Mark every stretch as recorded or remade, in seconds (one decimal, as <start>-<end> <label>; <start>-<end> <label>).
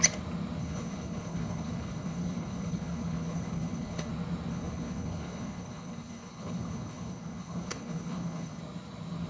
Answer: 0.0-0.6 recorded; 0.6-4.1 remade; 4.1-4.5 recorded; 4.5-8.6 remade; 8.6-9.3 recorded